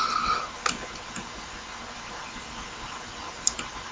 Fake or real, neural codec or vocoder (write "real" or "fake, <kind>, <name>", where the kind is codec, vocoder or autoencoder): real